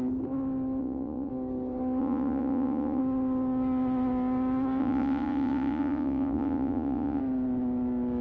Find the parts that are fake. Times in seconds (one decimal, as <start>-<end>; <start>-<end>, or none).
0.8-1.3; 2.0-3.0; 4.8-7.2